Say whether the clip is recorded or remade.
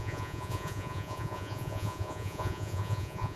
remade